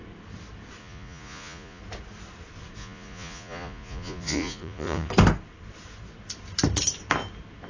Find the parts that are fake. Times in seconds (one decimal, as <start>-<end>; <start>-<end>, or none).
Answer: 0.8-1.8; 2.8-5.1